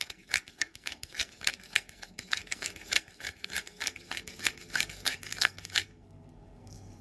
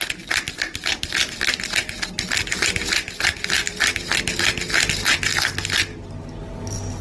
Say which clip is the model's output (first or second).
first